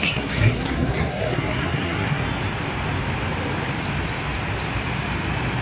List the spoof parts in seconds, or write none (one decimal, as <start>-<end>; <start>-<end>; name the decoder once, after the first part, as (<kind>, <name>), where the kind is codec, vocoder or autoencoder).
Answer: 0.0-2.2 (codec, SNAC)